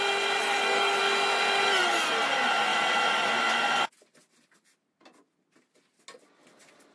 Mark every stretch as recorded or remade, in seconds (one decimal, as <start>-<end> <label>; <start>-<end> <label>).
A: 0.0-0.4 recorded; 0.4-1.0 remade; 1.0-6.9 recorded